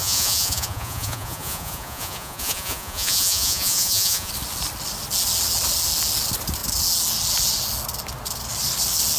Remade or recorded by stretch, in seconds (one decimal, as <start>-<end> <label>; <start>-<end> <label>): 0.0-4.3 remade; 4.3-9.2 recorded